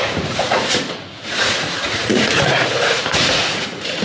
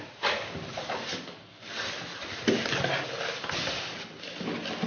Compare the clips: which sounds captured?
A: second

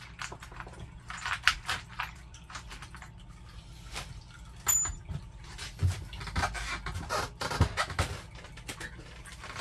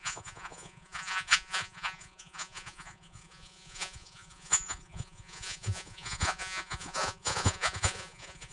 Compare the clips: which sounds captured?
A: first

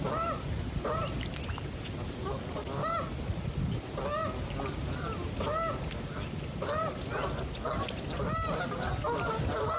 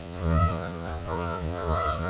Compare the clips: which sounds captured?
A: first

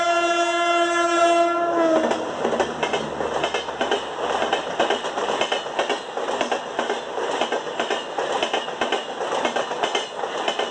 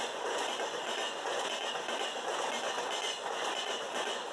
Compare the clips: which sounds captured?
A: first